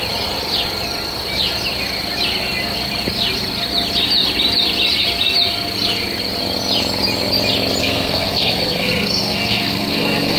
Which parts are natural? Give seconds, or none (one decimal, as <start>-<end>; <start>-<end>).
0.0-7.8